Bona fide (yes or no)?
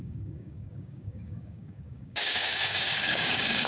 no